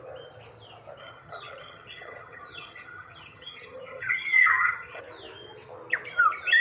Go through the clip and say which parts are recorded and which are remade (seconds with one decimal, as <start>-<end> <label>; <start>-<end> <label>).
0.0-1.0 recorded; 1.0-5.0 remade; 5.0-6.6 recorded